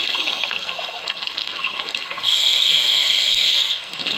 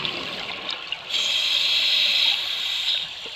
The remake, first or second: first